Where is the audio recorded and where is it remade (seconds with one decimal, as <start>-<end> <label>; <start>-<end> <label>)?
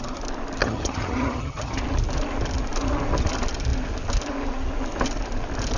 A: 0.0-0.6 recorded; 0.6-1.8 remade; 1.8-5.8 recorded